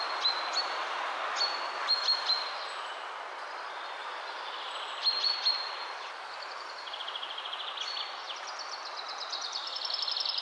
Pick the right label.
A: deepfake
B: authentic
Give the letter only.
A